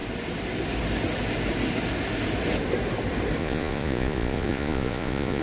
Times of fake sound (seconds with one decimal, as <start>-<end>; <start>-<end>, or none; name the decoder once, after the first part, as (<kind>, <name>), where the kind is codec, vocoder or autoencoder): 3.4-5.4 (vocoder, Vocos)